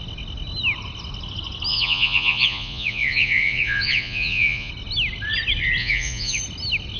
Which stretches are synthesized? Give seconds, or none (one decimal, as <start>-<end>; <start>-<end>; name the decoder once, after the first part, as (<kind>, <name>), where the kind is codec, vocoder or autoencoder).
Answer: 1.7-4.7 (vocoder, Vocos); 5.8-6.4